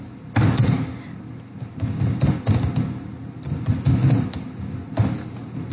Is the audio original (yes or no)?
yes